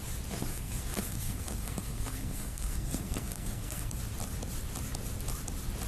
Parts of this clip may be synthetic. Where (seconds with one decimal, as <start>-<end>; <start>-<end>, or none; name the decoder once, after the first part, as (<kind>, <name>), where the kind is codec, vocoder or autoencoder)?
0.5-4.0 (codec, SNAC)